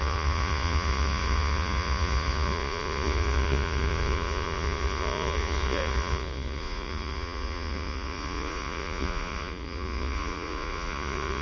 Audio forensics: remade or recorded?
remade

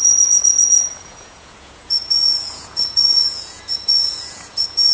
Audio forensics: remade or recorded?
remade